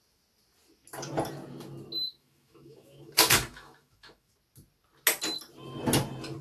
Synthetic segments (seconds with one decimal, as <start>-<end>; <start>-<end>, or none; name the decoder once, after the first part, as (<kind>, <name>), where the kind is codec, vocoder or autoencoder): 2.0-4.3 (autoencoder, DAC-VAE)